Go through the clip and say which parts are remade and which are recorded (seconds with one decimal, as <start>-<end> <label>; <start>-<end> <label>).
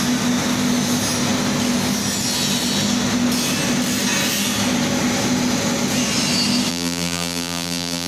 0.0-6.7 recorded; 6.7-8.1 remade